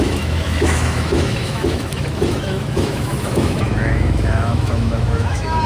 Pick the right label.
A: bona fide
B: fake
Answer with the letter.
B